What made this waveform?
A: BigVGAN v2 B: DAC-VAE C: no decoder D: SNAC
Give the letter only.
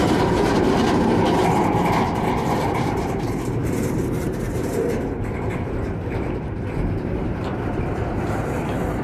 A